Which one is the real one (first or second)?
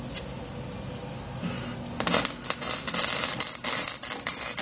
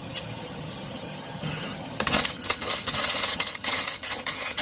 first